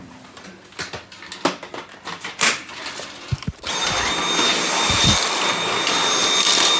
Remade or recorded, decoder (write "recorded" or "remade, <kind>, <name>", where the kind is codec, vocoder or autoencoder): recorded